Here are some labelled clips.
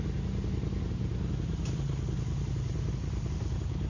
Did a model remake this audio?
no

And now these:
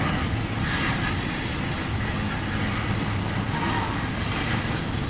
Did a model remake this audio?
no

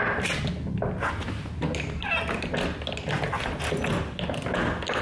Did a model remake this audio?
no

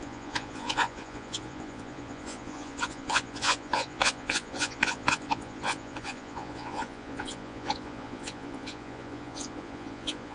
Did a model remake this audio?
yes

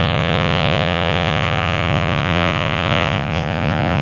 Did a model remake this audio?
yes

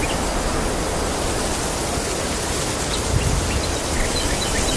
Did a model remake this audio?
no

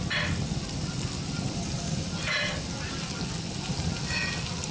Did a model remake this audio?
no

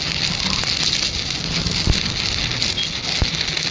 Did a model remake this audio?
no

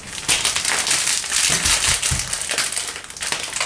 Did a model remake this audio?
no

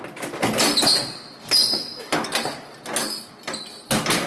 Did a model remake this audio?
no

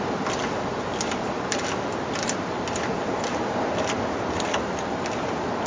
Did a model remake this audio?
no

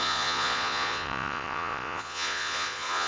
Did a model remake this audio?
yes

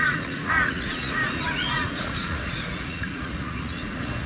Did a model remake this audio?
yes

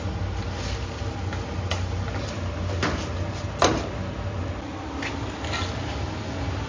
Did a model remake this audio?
no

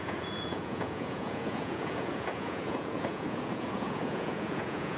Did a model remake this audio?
yes